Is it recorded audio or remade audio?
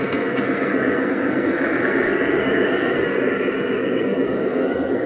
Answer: remade